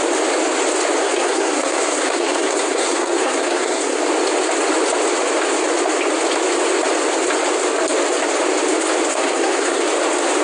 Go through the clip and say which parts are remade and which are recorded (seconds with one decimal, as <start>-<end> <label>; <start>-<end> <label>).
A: 0.0-1.0 recorded; 1.0-4.0 remade; 4.0-9.1 recorded; 9.1-9.8 remade; 9.8-10.4 recorded